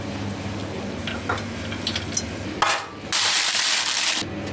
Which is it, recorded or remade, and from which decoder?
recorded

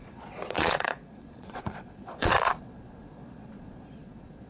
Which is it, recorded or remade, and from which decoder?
remade, vocoder, Vocos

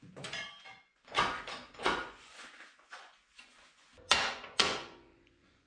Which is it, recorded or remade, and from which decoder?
remade, vocoder, Vocos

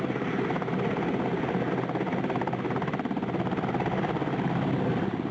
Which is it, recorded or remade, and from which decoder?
recorded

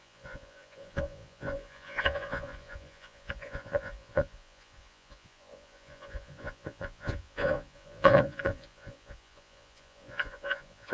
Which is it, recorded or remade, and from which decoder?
remade, vocoder, Vocos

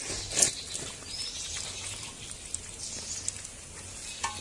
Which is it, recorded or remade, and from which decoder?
recorded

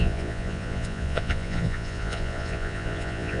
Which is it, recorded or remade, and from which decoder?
remade, vocoder, Vocos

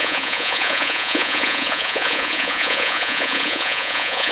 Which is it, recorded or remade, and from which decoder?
remade, vocoder, Vocos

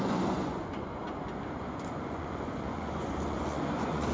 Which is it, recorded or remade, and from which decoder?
remade, vocoder, Vocos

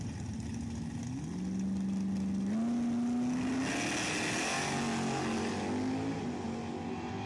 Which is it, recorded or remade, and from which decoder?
recorded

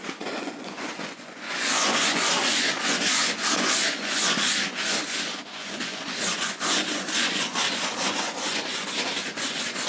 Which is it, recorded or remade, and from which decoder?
remade, vocoder, Vocos